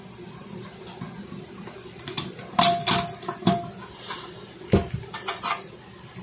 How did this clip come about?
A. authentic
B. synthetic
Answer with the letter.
A